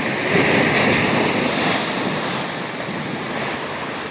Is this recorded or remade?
recorded